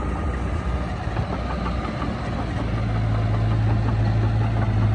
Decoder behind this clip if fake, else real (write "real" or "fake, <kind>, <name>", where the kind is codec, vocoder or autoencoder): real